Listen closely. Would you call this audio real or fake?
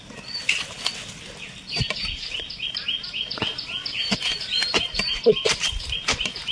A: real